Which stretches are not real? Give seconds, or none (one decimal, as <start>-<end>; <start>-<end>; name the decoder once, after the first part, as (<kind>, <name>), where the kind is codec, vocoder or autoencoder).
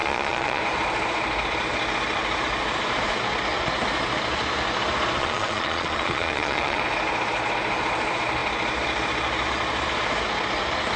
0.0-0.6 (vocoder, Vocos); 5.2-6.8